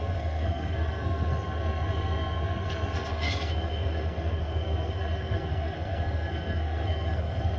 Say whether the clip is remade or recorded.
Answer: remade